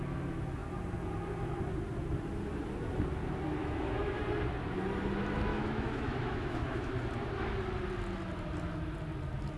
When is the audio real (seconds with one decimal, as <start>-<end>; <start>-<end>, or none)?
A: 0.0-3.6; 4.2-5.5; 6.9-9.6